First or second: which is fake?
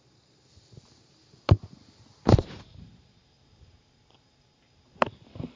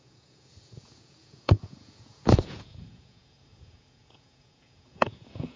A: second